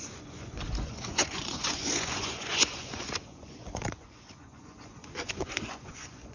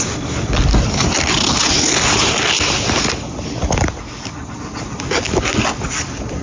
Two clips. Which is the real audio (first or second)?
second